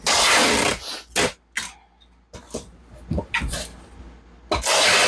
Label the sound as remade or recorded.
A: recorded